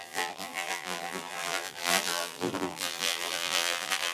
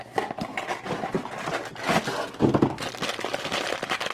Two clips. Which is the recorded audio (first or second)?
second